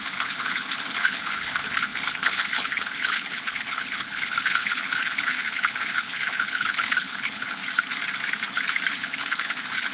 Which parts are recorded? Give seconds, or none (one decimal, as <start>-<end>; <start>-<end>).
7.6-8.9